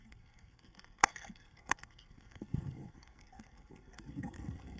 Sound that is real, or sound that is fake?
fake